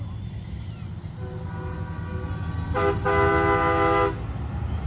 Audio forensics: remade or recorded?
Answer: recorded